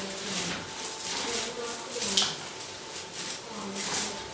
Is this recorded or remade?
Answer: recorded